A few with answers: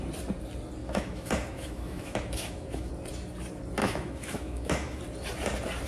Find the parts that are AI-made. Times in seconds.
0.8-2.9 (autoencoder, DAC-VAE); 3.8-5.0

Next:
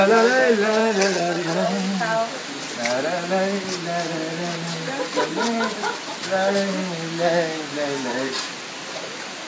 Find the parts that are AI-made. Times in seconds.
0.8-1.7 (vocoder, HiFi-GAN)

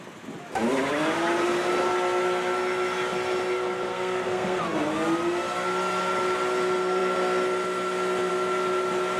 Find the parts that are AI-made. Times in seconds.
3.9-4.6 (codec, SNAC)

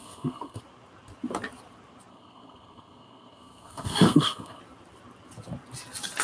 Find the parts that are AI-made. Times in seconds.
0.0-0.6 (codec, SNAC); 2.1-4.6

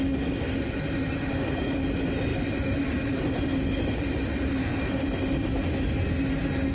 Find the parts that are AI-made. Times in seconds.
2.3-3.1 (vocoder, BigVGAN v2); 3.7-4.5

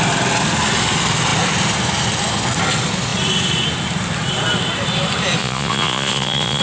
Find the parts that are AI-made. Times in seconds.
5.4-6.6 (vocoder, Vocos)

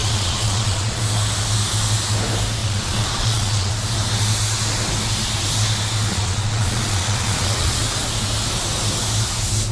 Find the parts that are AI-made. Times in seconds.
0.0-1.0 (vocoder, Vocos); 2.6-3.7; 6.1-7.8